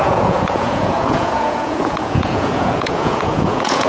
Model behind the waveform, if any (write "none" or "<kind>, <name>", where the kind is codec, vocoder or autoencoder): vocoder, Vocos